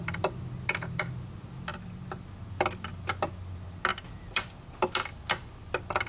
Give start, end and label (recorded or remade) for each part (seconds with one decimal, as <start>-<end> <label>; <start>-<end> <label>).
0.0-6.1 recorded